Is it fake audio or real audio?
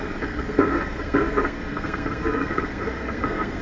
fake